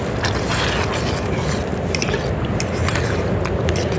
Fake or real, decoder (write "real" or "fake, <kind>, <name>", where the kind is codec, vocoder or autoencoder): real